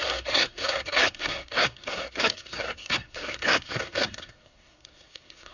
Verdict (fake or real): fake